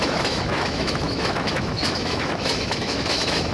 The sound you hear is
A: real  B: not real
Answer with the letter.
B